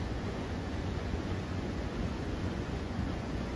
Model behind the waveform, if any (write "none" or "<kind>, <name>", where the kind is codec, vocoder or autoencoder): vocoder, Vocos